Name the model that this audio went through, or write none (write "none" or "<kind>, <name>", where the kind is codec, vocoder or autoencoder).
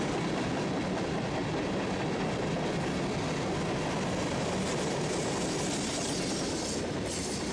none